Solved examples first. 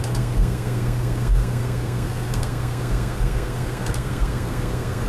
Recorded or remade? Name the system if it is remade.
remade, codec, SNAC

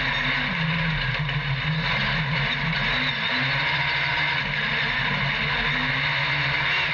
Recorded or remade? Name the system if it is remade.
recorded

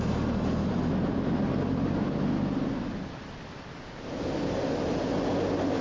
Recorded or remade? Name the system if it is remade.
recorded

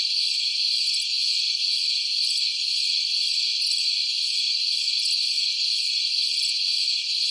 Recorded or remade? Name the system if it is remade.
recorded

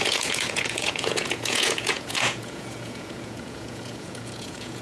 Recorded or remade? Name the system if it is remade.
remade, vocoder, Vocos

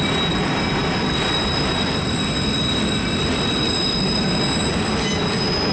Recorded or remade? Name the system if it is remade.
recorded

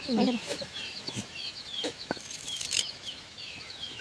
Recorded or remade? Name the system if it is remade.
remade, autoencoder, DAC-VAE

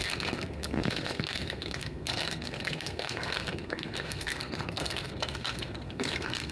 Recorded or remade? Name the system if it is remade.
remade, codec, SNAC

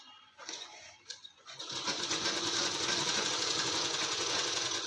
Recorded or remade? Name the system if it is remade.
remade, vocoder, Vocos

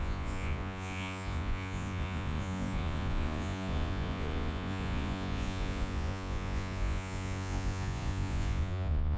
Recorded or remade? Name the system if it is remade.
remade, vocoder, Vocos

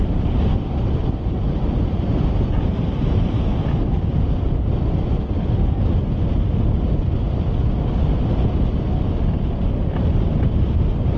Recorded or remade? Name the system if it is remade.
recorded